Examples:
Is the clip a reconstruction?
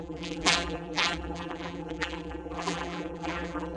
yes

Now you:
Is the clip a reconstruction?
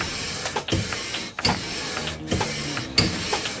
no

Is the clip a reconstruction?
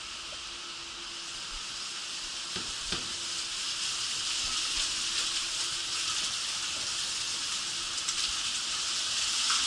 no